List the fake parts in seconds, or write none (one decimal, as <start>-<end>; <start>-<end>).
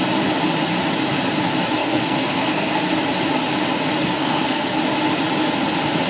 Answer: 1.8-2.8; 4.2-4.8